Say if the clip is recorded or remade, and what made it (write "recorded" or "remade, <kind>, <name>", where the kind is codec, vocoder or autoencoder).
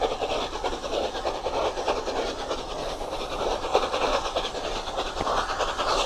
recorded